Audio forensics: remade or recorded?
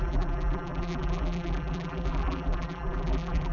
remade